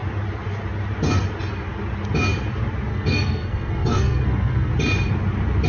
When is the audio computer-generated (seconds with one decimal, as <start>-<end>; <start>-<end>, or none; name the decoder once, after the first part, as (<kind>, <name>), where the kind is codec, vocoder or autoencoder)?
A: 2.9-4.7 (codec, SNAC)